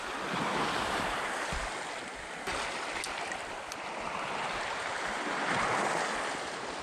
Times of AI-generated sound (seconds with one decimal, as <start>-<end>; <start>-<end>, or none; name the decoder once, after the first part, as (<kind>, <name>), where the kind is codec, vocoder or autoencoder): none